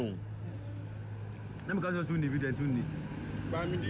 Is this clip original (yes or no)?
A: yes